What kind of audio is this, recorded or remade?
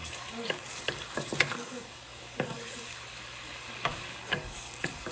remade